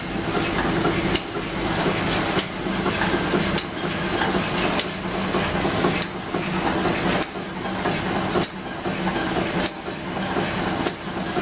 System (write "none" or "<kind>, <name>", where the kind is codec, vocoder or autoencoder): none